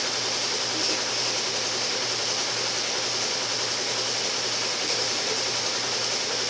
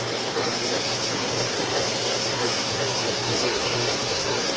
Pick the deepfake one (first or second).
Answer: second